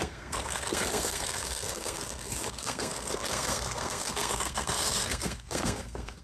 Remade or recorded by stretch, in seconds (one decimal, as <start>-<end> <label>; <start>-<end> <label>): 0.0-6.2 remade